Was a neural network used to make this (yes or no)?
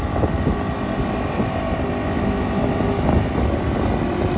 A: no